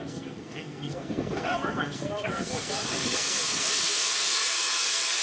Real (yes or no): no